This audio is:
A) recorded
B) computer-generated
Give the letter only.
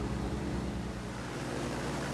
B